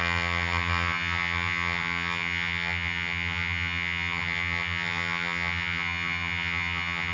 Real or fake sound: fake